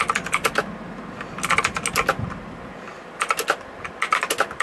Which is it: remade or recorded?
recorded